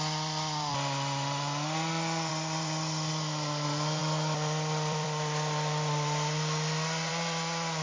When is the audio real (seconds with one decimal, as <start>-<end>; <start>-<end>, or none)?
0.7-2.3